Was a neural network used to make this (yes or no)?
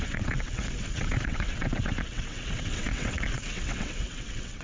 yes